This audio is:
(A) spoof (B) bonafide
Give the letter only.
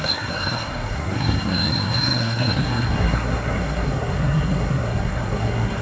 A